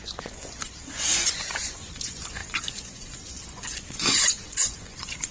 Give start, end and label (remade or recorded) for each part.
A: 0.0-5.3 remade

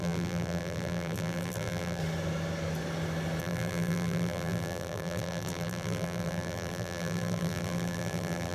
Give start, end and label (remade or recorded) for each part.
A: 0.0-2.0 remade; 2.0-3.4 recorded; 3.4-8.5 remade

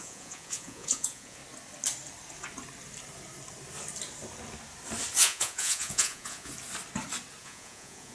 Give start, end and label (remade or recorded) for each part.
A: 0.0-1.4 remade; 1.4-5.2 recorded; 5.2-6.5 remade; 6.5-7.4 recorded; 7.4-8.1 remade